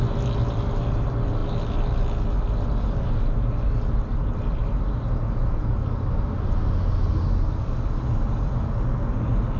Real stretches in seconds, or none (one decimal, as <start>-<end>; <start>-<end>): 0.0-9.6